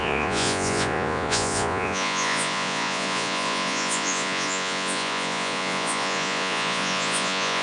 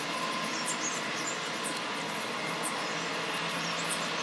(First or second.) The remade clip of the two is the first